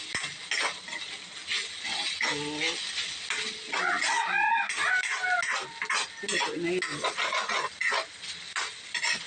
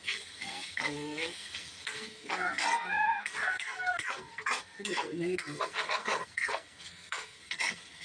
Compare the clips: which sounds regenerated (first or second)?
second